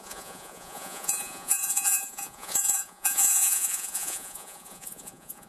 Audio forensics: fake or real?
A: fake